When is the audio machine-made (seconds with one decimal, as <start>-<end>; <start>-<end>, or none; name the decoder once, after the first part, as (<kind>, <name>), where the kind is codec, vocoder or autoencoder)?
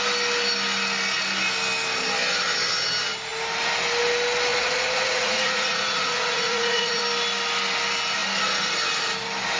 4.5-7.0 (vocoder, Vocos)